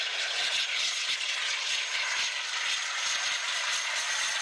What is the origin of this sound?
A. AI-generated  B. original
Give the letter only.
B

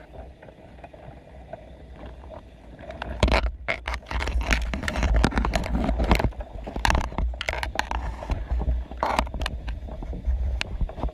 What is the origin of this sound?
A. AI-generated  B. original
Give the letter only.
A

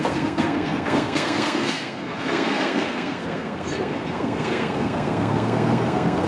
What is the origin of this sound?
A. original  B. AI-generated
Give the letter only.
B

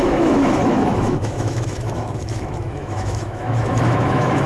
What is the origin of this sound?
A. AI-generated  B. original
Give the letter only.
A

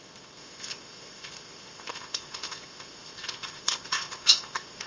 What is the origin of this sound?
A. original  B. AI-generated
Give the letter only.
B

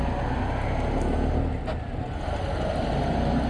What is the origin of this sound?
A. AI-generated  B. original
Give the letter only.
B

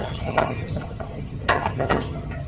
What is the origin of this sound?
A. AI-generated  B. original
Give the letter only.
A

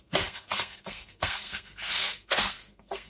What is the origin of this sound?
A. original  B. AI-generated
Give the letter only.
B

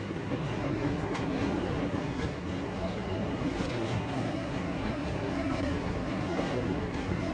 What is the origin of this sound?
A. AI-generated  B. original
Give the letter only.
A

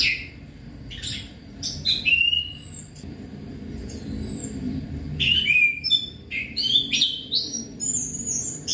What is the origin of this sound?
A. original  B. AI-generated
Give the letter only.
B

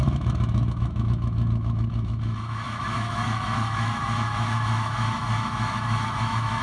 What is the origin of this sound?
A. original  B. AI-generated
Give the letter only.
B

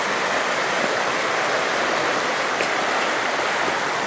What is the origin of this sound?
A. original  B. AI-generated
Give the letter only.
A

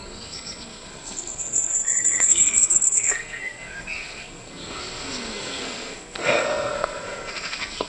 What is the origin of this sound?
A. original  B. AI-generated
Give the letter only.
B